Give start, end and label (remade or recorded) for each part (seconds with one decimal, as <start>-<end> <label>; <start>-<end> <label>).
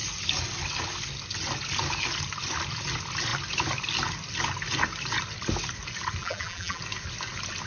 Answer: 0.0-6.2 recorded; 6.2-6.8 remade; 6.8-7.7 recorded